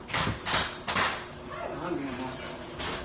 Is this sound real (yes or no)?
yes